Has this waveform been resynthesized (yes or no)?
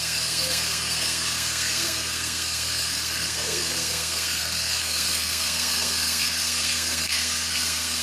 yes